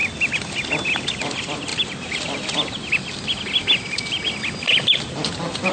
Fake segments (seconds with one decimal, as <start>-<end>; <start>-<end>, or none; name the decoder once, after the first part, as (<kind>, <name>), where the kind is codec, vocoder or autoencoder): none